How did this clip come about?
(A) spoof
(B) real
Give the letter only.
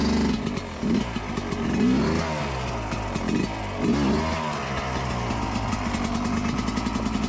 B